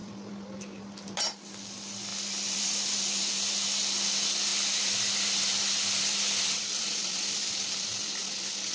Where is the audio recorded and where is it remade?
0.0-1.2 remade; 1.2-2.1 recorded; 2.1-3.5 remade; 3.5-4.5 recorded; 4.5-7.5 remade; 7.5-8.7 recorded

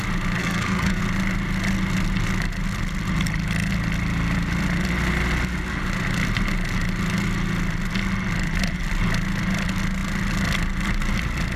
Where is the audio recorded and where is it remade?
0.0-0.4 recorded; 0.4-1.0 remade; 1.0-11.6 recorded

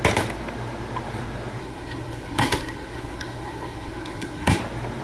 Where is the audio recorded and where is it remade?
0.0-1.6 recorded; 1.6-4.6 remade; 4.6-5.0 recorded

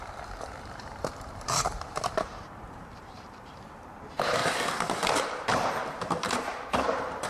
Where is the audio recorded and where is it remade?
0.0-4.4 remade; 4.4-5.2 recorded; 5.2-7.3 remade

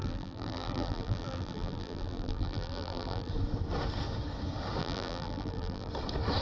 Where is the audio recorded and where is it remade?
0.0-3.3 remade; 3.3-4.8 recorded; 4.8-5.9 remade; 5.9-6.4 recorded

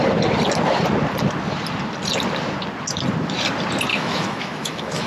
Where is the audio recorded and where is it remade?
0.0-3.9 recorded; 3.9-5.1 remade

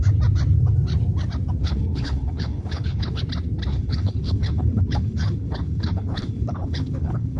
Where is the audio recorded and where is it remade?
0.0-1.6 recorded; 1.6-3.2 remade; 3.2-3.7 recorded; 3.7-7.4 remade

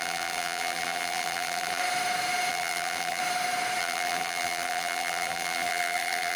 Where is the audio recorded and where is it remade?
0.0-1.8 remade; 1.8-2.5 recorded; 2.5-3.2 remade; 3.2-3.8 recorded; 3.8-6.4 remade